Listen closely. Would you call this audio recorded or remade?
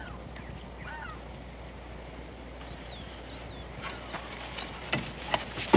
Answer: recorded